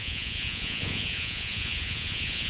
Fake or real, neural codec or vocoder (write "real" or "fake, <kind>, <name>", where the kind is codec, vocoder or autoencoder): fake, vocoder, Vocos